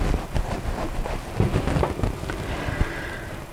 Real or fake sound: real